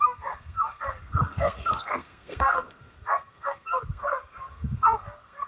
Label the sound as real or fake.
fake